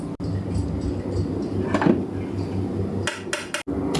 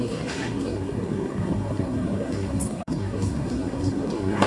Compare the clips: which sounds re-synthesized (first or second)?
second